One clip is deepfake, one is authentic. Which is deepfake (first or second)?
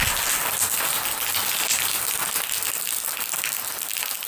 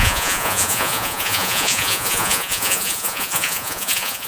second